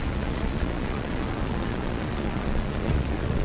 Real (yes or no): no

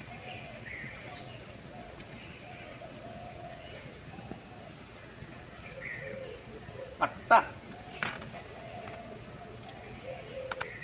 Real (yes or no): no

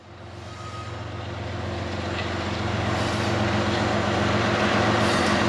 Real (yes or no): yes